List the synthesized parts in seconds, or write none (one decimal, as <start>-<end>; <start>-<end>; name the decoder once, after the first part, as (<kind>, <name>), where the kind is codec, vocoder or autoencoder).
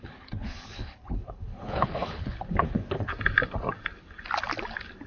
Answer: 0.0-3.1 (codec, HILCodec)